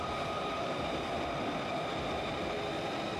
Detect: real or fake real